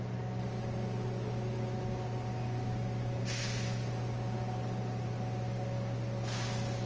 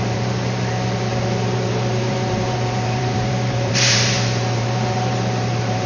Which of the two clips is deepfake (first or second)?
second